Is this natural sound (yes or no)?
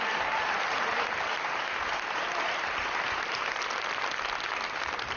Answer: no